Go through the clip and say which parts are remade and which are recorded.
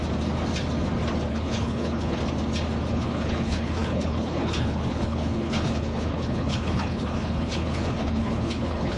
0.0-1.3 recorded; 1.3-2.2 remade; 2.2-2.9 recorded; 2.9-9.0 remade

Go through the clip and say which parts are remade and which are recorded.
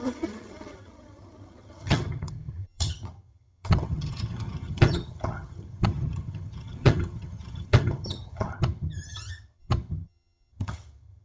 0.0-11.2 remade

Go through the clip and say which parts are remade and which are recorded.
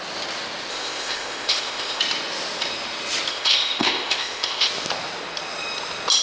0.0-0.7 recorded; 0.7-2.0 remade; 2.0-3.3 recorded; 3.3-4.7 remade; 4.7-6.2 recorded